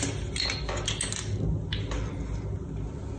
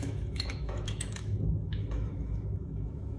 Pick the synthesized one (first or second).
second